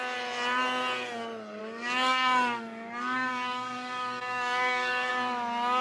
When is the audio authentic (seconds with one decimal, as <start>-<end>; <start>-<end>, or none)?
0.0-1.6; 5.1-5.8

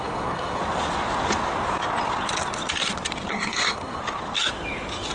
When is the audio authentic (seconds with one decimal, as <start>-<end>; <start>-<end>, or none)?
0.6-3.3; 4.0-5.1

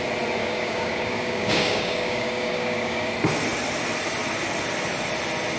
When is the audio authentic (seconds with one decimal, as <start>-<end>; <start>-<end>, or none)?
0.0-0.4; 3.1-5.6

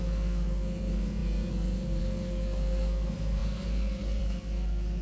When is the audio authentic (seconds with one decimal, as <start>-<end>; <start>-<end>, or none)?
none

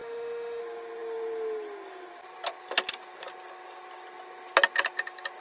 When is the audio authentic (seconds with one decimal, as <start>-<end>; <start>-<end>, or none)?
0.6-5.4